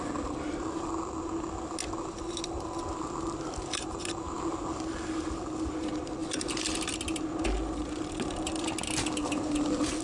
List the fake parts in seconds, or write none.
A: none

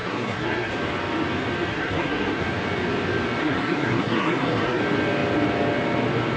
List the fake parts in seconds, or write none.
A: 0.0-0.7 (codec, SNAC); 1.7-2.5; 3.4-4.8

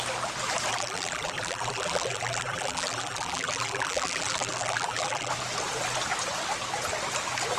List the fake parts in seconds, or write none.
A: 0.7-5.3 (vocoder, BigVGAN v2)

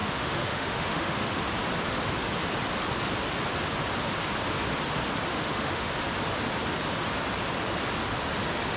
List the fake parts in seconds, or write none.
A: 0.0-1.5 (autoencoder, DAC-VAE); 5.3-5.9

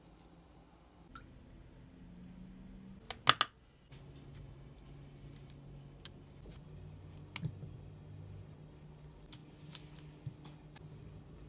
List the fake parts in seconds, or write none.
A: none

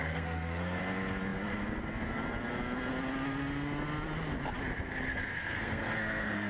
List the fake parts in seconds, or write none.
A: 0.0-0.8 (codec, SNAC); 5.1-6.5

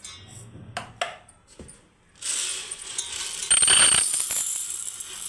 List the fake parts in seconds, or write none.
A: 2.5-3.0 (vocoder, Vocos)